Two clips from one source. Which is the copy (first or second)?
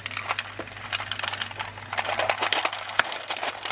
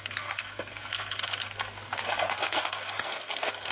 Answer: second